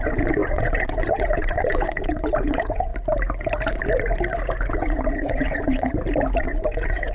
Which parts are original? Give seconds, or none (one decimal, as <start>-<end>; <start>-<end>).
2.9-4.7; 5.9-6.4